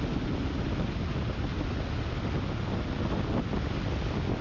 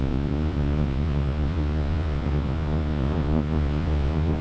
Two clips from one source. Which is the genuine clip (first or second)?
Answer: first